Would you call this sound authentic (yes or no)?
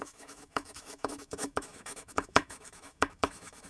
no